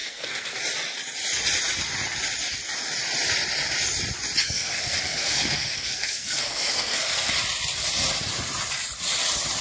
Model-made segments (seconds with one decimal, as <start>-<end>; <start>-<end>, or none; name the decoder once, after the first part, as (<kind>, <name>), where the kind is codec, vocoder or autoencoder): 0.0-0.6 (codec, SNAC); 4.4-7.3

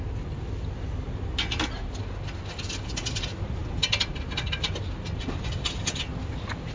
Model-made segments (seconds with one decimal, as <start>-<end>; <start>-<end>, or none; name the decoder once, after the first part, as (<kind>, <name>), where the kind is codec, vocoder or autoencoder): none